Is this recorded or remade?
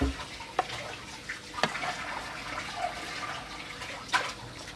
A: recorded